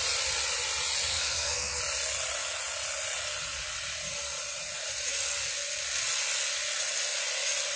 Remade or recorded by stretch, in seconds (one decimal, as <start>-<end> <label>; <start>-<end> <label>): 0.0-1.1 recorded; 1.1-1.8 remade; 1.8-7.8 recorded